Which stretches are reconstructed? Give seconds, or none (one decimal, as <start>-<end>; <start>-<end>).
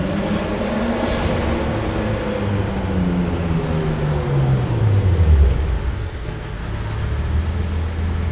5.9-6.6